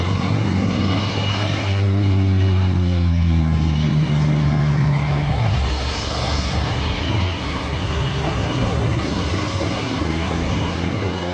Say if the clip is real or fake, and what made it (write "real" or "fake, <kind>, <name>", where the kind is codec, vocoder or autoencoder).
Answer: fake, codec, SNAC